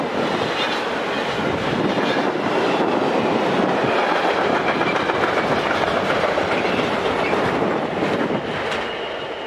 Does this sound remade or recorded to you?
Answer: recorded